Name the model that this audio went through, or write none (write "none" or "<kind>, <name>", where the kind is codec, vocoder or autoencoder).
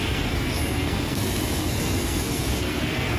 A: codec, SNAC